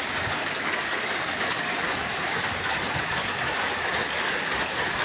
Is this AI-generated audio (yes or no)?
yes